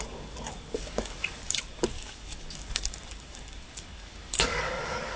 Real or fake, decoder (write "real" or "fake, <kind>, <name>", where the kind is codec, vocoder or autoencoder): fake, codec, DAC